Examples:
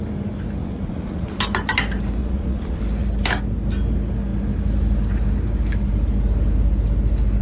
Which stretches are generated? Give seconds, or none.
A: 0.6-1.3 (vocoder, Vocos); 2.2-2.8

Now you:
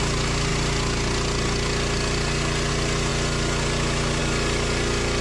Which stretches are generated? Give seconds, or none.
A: none